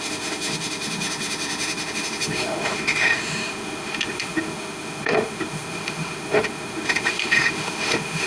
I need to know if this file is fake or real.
fake